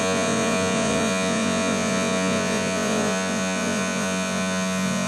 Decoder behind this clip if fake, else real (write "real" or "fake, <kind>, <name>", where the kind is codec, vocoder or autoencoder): fake, vocoder, Vocos